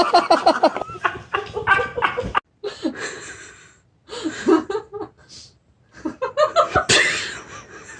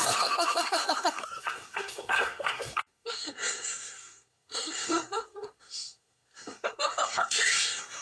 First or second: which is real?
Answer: first